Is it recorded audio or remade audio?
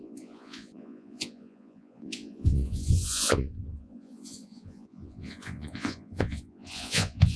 remade